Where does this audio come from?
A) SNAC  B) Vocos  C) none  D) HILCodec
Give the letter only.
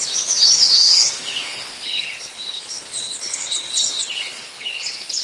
D